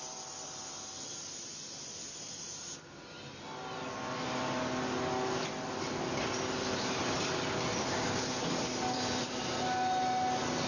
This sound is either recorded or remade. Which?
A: recorded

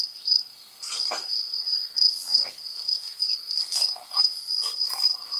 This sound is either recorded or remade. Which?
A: remade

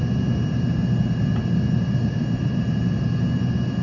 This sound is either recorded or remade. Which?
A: remade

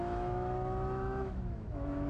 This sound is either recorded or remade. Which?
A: remade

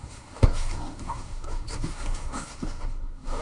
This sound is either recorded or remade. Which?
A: remade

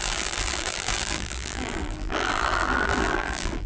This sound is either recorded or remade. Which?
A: remade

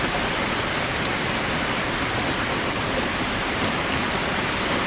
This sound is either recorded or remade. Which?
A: remade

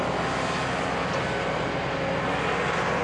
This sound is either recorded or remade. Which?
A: recorded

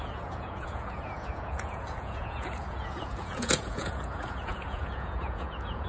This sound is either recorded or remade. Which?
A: remade